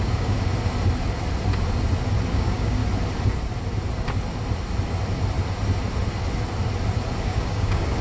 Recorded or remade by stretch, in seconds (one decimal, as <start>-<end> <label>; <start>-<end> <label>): 0.0-0.5 remade; 0.5-2.3 recorded; 2.3-2.8 remade; 2.8-7.2 recorded; 7.2-8.0 remade